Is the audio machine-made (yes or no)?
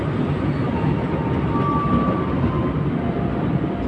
no